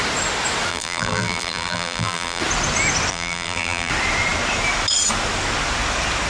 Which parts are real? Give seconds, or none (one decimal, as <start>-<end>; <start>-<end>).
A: 0.0-0.7; 2.4-3.1; 3.9-6.3